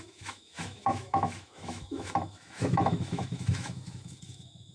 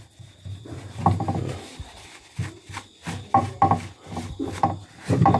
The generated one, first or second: first